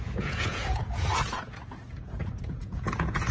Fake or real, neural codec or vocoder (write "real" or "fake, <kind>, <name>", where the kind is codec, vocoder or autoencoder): fake, vocoder, Vocos